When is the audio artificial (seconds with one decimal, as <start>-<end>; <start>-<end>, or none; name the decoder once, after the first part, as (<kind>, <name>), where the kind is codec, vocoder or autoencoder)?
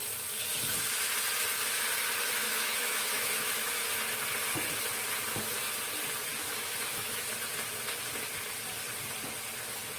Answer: 2.4-4.0 (autoencoder, DAC-VAE); 6.3-7.3